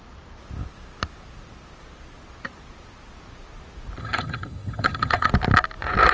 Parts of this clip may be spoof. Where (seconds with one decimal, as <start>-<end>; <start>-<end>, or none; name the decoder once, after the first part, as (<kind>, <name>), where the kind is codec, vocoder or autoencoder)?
4.0-5.3 (vocoder, HiFi-GAN)